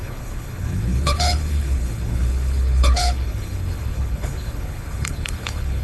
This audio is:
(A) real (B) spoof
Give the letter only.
B